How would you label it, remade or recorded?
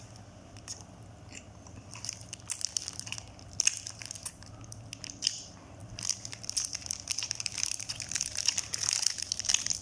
remade